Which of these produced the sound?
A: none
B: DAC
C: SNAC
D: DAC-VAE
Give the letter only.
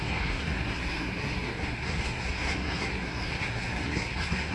C